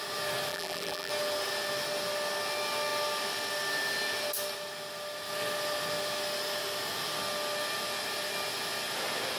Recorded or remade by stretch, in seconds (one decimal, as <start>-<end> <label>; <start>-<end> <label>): 0.0-0.5 recorded; 0.5-1.1 remade; 1.1-9.4 recorded